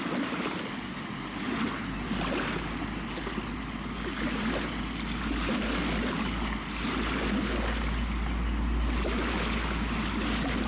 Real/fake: real